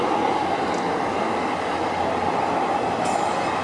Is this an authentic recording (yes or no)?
yes